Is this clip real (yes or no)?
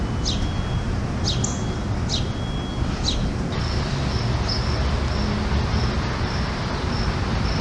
yes